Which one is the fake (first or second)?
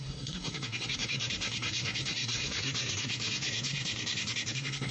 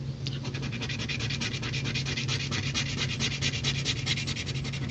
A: first